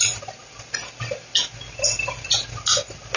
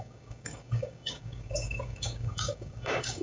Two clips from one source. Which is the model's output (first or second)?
second